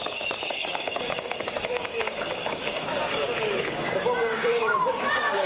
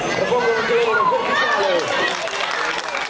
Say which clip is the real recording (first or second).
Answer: second